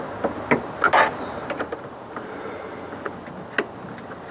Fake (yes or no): no